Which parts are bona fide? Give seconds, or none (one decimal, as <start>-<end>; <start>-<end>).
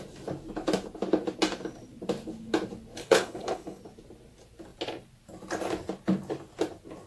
0.0-3.0; 3.8-7.1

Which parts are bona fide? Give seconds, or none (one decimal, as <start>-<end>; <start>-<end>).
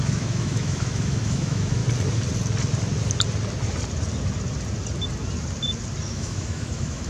1.8-6.1